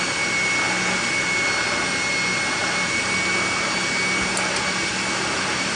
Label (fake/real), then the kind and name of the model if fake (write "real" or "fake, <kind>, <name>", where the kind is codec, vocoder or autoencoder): real